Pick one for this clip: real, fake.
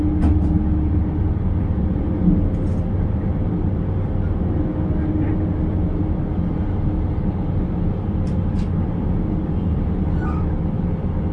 real